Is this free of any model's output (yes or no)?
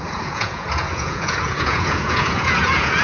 no